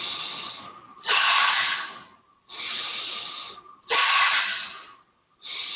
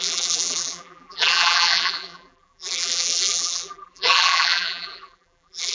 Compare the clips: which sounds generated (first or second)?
second